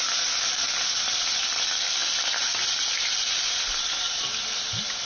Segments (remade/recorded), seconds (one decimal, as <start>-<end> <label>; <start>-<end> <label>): 0.0-5.1 recorded